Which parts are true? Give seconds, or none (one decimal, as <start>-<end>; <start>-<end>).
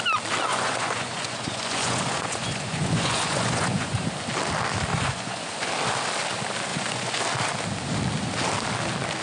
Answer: 0.0-0.5; 4.0-4.9; 5.7-6.7; 7.2-9.2